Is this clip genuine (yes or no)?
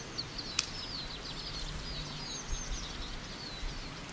yes